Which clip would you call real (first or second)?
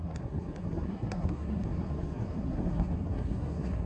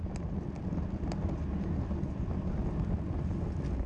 second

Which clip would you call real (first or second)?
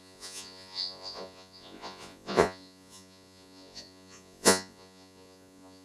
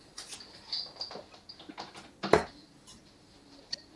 second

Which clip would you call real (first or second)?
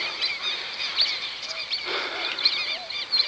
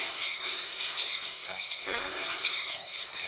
first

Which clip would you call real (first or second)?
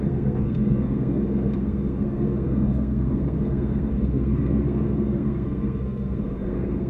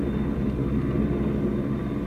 second